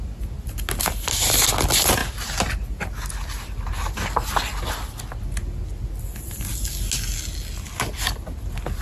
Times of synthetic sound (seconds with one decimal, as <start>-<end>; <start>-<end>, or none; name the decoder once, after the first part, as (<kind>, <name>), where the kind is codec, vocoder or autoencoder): 2.0-2.9 (vocoder, BigVGAN v2)